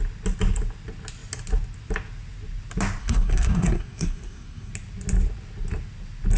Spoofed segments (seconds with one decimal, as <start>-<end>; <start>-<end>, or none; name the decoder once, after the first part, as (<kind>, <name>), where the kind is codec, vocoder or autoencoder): 3.0-4.7 (codec, SNAC)